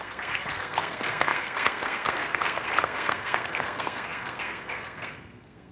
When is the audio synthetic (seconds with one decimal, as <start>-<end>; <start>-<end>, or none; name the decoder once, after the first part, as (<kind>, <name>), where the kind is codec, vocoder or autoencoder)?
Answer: 0.0-5.7 (codec, SNAC)